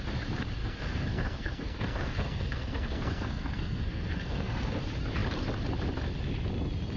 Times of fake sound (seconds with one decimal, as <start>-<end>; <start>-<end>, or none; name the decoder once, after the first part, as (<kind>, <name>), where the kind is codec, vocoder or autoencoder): 0.6-4.8 (codec, SNAC)